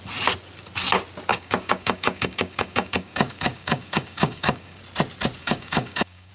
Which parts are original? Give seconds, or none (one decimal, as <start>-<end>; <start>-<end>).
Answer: 0.0-1.3; 4.8-5.4